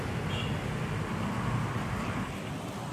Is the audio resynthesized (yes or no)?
yes